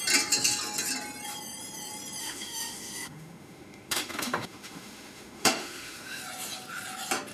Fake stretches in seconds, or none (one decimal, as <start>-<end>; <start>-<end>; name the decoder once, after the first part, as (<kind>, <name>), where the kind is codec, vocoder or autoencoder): 2.2-6.2 (autoencoder, DAC-VAE)